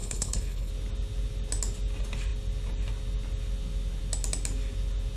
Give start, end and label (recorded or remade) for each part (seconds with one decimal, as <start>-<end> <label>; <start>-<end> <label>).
0.0-0.7 remade; 0.7-5.2 recorded